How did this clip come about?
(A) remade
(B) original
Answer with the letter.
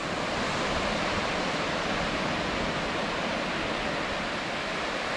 B